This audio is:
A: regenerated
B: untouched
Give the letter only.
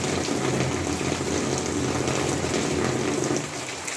B